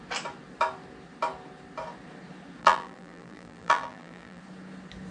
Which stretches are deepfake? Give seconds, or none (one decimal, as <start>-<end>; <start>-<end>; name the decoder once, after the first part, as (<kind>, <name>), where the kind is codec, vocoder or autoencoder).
2.6-4.4 (vocoder, BigVGAN v2)